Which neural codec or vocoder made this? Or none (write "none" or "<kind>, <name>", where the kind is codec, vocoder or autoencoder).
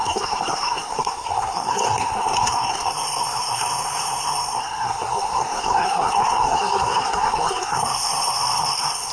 codec, SNAC